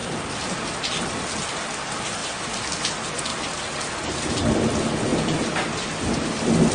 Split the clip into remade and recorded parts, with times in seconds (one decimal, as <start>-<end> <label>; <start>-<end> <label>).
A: 0.0-6.7 recorded